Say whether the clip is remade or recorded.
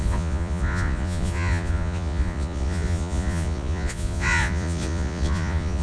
remade